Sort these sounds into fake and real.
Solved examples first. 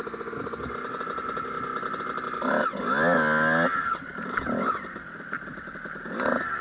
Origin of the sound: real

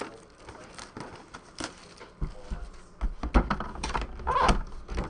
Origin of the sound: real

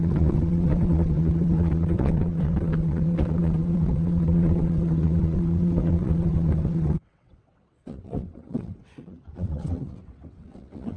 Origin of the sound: fake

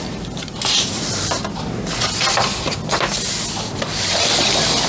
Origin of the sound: real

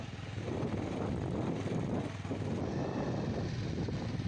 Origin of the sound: real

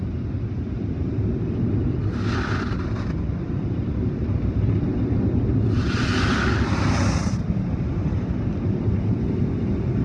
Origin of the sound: real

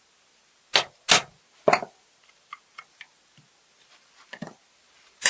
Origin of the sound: real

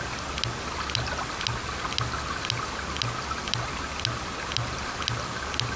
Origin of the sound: real